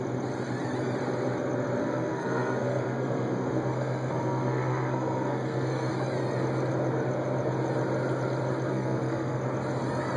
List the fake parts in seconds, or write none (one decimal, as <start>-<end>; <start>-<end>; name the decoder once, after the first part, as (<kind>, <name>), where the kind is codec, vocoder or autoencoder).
1.8-5.9 (codec, SNAC); 8.7-9.4